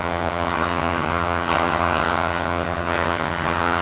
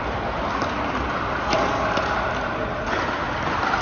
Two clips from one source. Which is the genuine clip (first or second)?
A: second